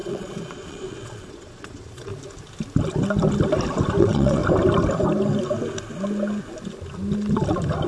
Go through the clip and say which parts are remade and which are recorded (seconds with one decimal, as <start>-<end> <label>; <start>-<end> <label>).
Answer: 0.0-2.1 remade; 2.1-4.0 recorded; 4.0-4.4 remade; 4.4-7.9 recorded